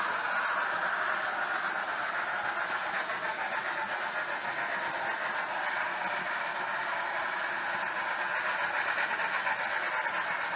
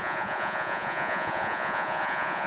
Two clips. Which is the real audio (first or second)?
first